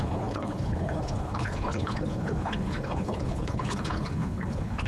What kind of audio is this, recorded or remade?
remade